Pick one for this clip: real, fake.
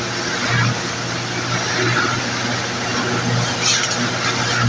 real